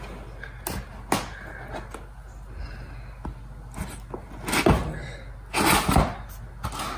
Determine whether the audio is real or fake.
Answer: real